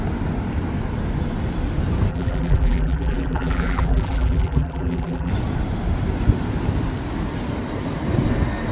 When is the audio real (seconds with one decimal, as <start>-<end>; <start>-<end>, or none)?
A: 0.0-2.1; 5.3-8.7